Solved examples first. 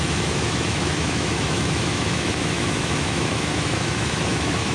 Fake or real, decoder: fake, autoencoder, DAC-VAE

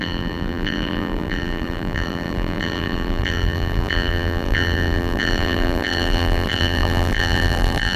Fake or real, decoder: fake, vocoder, BigVGAN v2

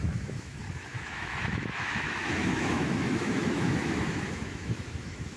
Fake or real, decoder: fake, autoencoder, DAC-VAE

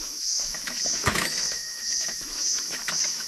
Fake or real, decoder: fake, autoencoder, DAC-VAE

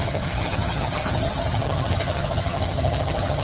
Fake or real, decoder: fake, vocoder, HiFi-GAN